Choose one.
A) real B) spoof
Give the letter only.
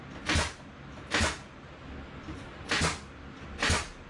A